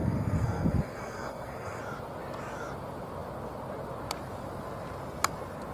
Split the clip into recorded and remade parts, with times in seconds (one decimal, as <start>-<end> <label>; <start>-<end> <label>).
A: 0.0-1.8 remade; 1.8-5.7 recorded